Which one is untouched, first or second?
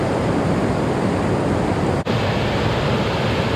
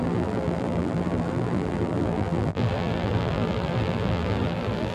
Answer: first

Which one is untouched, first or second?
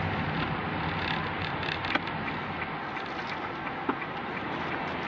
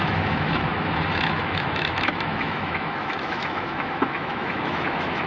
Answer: first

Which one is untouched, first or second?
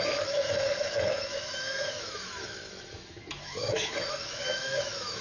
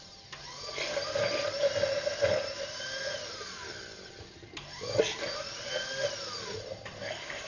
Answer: second